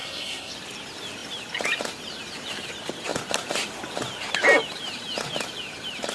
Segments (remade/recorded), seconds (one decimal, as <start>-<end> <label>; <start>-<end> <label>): 0.0-0.5 remade; 0.5-6.1 recorded